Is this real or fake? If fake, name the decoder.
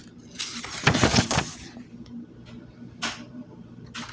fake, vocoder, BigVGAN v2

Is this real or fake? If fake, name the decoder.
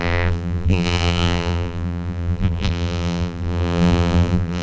fake, vocoder, BigVGAN v2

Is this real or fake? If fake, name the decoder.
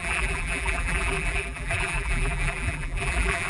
fake, vocoder, BigVGAN v2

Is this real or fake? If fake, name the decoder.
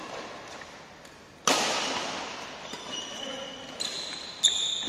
real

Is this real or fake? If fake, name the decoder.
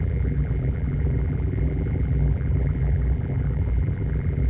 fake, vocoder, BigVGAN v2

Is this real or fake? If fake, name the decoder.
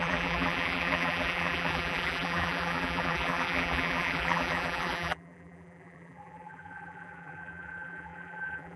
fake, vocoder, BigVGAN v2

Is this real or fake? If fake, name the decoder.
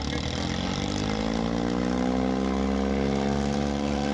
real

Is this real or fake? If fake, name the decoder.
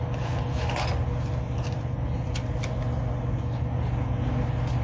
real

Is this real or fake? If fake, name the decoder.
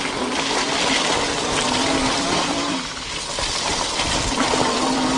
fake, vocoder, BigVGAN v2